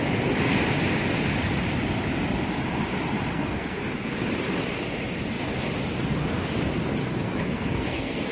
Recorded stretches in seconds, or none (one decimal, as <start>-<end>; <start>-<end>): 0.0-3.3; 3.8-7.0